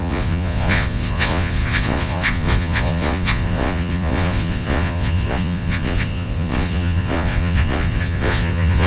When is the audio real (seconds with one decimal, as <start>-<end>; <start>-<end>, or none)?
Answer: none